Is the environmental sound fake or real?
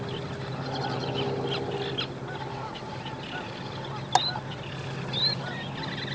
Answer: real